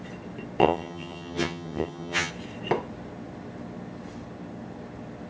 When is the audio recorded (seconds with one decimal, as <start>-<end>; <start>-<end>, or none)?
0.0-0.6; 2.3-5.3